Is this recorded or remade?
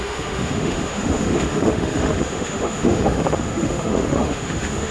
remade